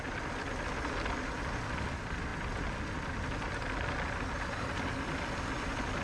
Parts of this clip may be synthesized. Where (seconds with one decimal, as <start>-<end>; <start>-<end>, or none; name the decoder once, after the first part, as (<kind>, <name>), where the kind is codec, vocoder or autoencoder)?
none